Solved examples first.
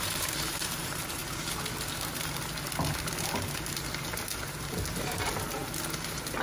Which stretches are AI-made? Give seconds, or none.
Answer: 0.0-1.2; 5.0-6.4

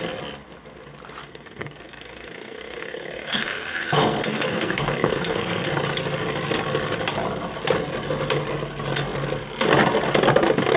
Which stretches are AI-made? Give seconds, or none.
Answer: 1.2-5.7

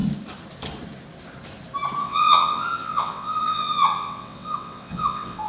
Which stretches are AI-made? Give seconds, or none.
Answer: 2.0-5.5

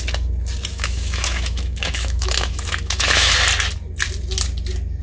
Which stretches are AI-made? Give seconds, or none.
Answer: 0.7-3.3

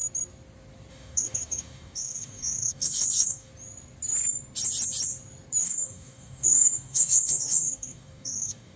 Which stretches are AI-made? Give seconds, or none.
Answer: 0.9-3.5; 5.6-8.8

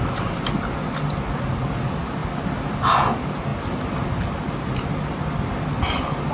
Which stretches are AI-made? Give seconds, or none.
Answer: none

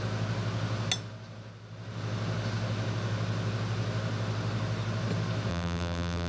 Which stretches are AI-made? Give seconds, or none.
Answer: 5.5-6.3